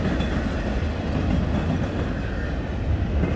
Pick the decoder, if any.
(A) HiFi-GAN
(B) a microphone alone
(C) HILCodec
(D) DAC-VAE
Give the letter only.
B